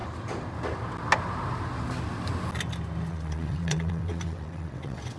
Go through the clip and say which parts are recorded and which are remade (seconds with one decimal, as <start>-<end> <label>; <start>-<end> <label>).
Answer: 0.0-3.1 recorded; 3.1-5.2 remade